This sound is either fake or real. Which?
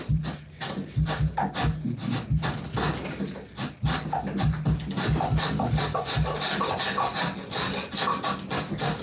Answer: real